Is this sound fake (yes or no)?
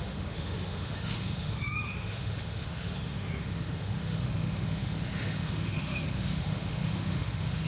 yes